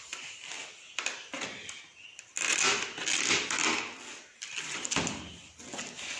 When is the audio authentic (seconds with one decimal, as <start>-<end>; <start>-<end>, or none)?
0.0-6.2